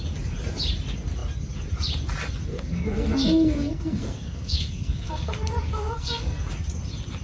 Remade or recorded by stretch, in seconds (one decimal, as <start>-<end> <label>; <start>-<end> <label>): 0.0-2.5 recorded; 2.5-6.5 remade; 6.5-7.2 recorded